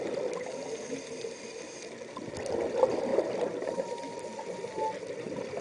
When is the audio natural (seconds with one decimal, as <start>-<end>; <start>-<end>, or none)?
0.0-5.6